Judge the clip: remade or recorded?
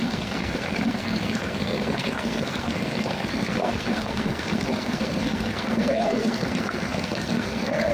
remade